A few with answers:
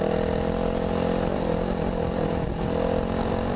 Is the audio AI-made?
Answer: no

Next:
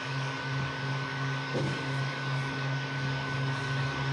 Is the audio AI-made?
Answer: yes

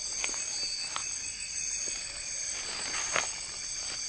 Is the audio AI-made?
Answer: no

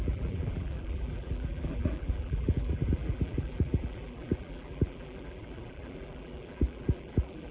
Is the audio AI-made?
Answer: yes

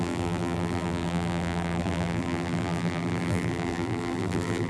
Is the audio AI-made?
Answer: yes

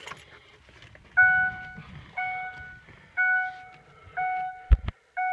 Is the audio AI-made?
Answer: no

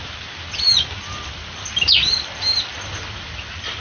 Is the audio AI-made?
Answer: no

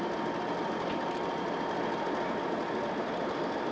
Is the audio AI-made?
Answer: yes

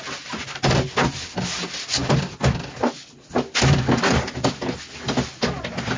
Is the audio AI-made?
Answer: no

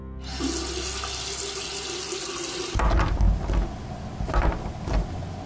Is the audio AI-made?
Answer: no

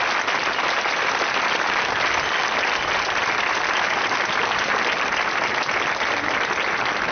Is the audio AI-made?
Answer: no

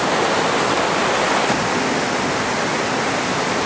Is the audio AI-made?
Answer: yes